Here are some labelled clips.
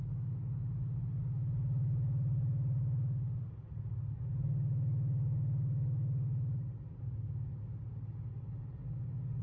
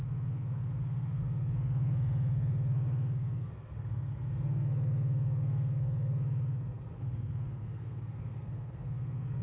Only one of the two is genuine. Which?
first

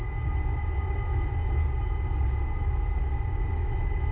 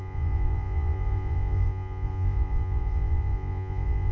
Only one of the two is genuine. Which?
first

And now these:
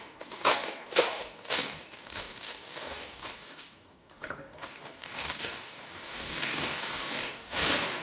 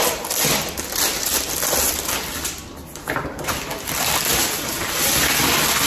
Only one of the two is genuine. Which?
second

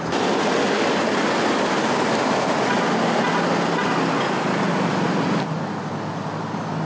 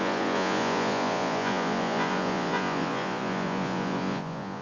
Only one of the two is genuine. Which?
first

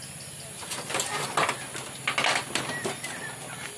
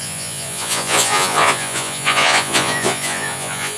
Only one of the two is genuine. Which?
first